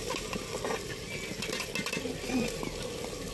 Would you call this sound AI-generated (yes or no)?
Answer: no